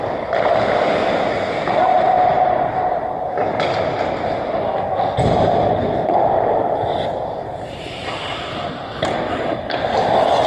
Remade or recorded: recorded